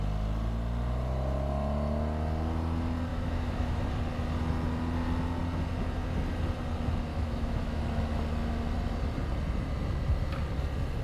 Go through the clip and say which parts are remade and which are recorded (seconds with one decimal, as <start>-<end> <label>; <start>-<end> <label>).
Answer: 0.0-3.1 recorded; 3.1-3.8 remade; 3.8-7.1 recorded; 7.1-7.8 remade; 7.8-11.0 recorded